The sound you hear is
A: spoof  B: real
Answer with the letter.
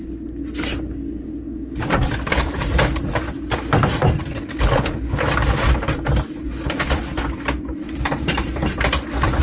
B